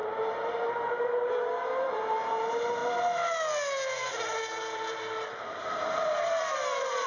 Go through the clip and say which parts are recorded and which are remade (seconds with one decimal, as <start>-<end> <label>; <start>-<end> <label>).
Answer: 0.0-0.7 recorded; 0.7-2.8 remade; 2.8-4.1 recorded; 4.1-7.1 remade